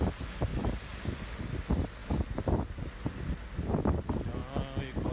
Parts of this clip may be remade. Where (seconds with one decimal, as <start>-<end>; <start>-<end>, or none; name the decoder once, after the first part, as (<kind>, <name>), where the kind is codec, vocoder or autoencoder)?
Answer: none